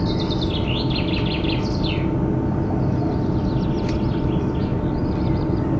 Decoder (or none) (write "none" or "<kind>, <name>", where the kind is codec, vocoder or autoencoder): none